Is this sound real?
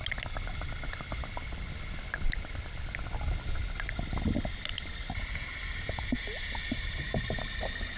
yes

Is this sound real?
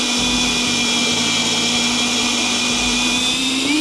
yes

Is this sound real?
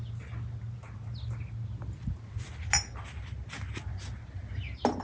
yes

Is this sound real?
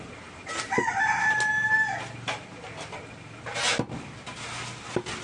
yes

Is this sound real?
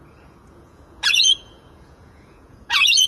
no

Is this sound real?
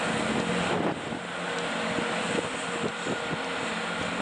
yes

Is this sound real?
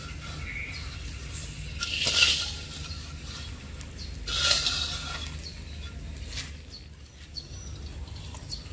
yes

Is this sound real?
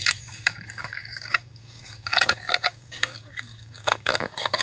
no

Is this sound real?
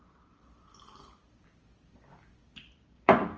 no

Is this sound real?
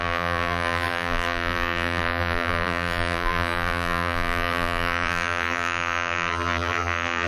no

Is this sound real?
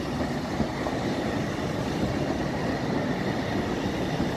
yes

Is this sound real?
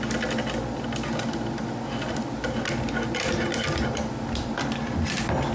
yes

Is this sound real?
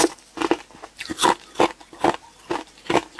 yes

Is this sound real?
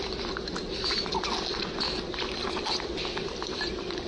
yes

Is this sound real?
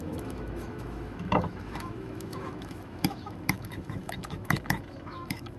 no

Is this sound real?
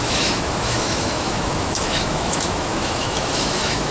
no